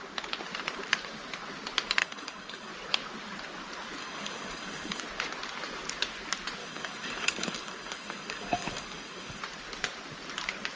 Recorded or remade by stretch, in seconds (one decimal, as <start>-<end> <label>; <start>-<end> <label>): 0.0-2.0 recorded; 2.0-2.7 remade; 2.7-4.0 recorded; 4.0-5.0 remade; 5.0-6.6 recorded; 6.6-9.4 remade; 9.4-10.8 recorded